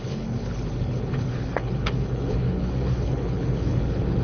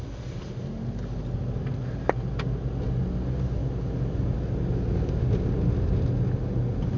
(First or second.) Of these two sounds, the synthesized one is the first